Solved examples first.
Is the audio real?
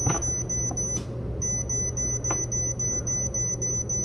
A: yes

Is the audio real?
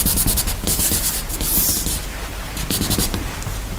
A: yes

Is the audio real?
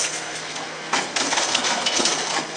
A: no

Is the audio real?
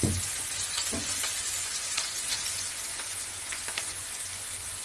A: no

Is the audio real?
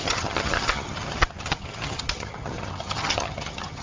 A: no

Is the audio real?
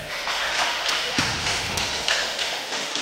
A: no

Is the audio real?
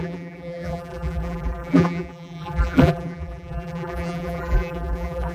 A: no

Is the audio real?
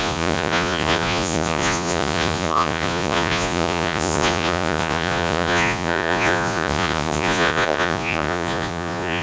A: no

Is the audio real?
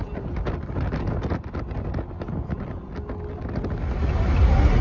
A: yes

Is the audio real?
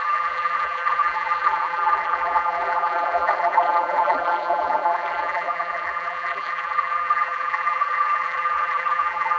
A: no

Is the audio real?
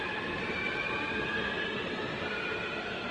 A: yes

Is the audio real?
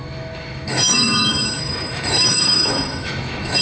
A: no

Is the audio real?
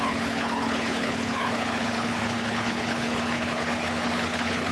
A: no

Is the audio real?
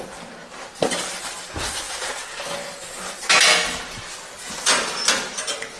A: yes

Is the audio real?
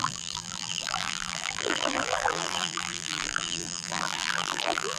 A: no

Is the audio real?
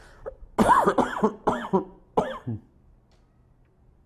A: yes